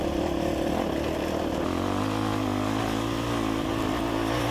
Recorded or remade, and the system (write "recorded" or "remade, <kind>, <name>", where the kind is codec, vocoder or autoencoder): recorded